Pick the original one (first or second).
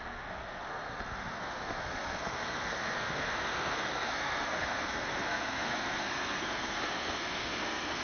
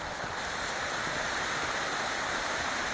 second